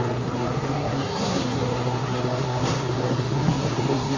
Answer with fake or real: fake